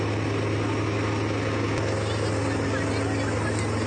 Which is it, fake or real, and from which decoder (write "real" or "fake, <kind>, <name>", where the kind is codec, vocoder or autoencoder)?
real